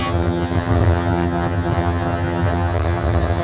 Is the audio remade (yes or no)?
yes